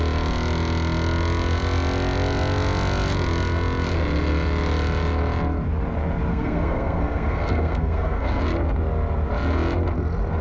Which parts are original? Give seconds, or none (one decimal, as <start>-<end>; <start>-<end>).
0.0-6.3; 8.4-10.4